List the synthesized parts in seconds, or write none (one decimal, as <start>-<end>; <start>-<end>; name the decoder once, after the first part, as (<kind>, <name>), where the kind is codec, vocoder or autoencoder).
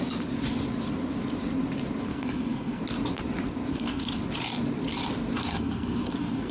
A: 2.1-2.8 (codec, SNAC); 3.7-4.2; 5.4-6.5